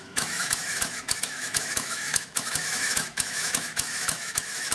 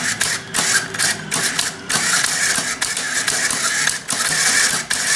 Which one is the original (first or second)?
second